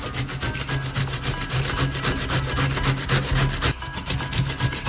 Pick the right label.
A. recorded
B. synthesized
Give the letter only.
A